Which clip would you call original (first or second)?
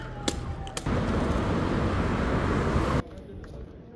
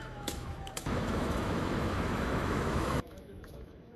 first